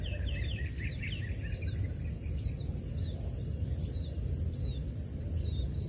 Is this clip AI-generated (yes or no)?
no